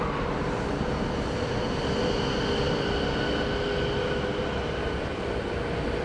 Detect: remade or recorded recorded